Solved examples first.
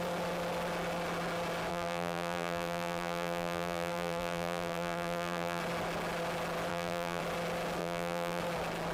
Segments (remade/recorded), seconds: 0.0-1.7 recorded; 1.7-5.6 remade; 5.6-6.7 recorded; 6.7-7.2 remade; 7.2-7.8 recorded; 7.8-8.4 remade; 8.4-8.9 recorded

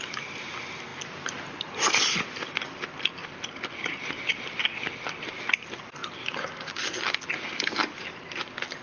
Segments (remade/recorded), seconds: 0.0-8.8 recorded

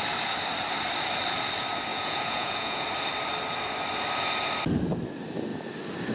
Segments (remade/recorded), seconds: 0.0-1.9 recorded; 1.9-2.8 remade; 2.8-6.1 recorded

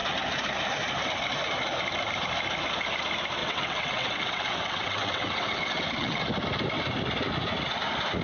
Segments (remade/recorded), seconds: 0.0-3.4 recorded; 3.4-6.2 remade; 6.2-8.2 recorded

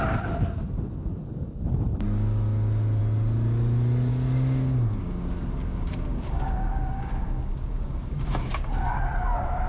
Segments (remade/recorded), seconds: 0.0-4.1 recorded; 4.1-9.0 remade; 9.0-9.7 recorded